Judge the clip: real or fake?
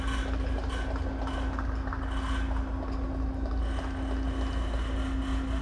real